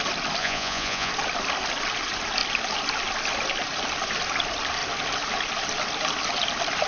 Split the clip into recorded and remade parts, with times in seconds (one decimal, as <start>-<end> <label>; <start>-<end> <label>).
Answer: 0.0-0.4 recorded; 0.4-1.1 remade; 1.1-6.9 recorded